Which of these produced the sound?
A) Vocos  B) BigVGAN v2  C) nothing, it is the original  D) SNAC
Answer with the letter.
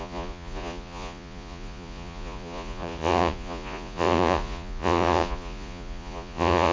A